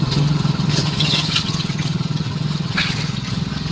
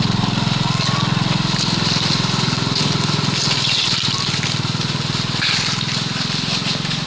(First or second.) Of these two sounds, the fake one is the first